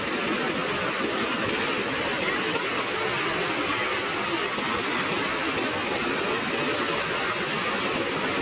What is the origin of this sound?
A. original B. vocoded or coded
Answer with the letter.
A